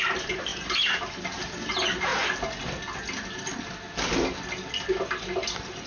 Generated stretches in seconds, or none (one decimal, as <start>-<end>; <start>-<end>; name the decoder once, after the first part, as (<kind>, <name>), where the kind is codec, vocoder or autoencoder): 0.0-2.1 (vocoder, BigVGAN v2)